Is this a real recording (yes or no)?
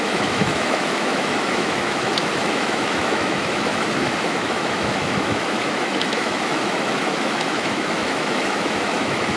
no